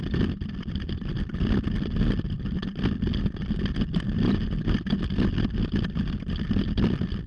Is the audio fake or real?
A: real